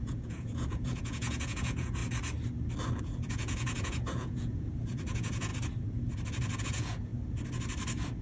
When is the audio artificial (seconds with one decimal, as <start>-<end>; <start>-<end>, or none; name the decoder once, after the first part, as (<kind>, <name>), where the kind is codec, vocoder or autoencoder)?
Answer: 0.0-2.0 (vocoder, Vocos); 3.0-5.5; 6.6-7.1